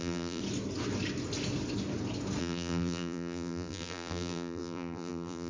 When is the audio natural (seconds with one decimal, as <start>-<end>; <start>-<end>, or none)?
0.4-2.4